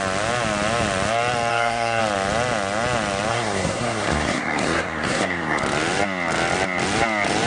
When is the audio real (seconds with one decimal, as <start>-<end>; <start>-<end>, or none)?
0.0-1.5; 2.0-3.3; 5.6-7.5

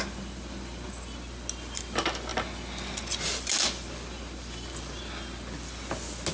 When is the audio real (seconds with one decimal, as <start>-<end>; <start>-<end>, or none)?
0.0-6.3

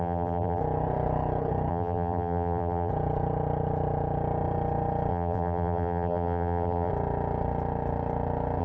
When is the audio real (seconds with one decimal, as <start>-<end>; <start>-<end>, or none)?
0.6-1.7; 2.9-5.1; 6.9-8.6

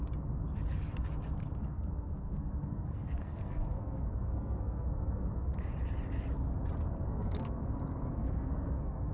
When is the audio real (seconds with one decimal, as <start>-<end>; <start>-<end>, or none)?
0.0-1.6; 5.5-6.9; 7.7-8.2

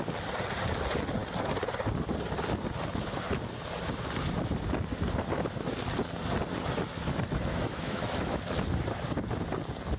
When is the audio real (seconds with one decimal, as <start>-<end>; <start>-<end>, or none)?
0.0-7.5; 8.4-10.0

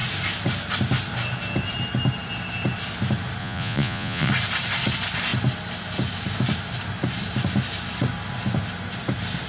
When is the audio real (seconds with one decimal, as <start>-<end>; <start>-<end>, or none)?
0.0-3.4; 4.3-9.5